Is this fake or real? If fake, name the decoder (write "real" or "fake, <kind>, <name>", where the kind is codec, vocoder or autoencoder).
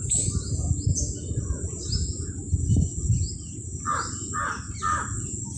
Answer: real